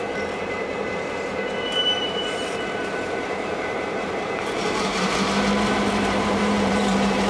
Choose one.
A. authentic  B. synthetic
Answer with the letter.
B